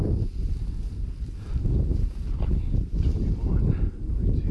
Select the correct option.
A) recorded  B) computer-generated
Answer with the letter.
A